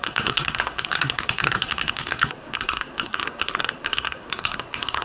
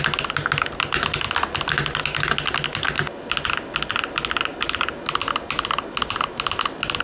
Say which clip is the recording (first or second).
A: second